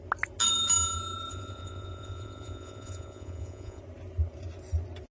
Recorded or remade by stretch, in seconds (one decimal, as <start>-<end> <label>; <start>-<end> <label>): 0.0-1.3 recorded; 1.3-3.8 remade; 3.8-5.1 recorded